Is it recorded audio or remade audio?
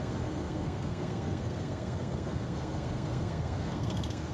remade